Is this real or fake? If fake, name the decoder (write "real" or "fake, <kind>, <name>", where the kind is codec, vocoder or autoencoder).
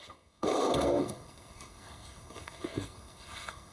fake, codec, SNAC